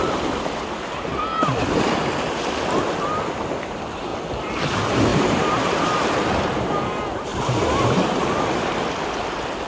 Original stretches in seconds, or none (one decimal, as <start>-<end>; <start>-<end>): 0.0-5.1; 5.9-7.3; 8.8-9.7